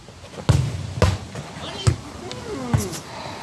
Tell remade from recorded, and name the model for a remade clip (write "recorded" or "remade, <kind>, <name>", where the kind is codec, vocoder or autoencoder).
recorded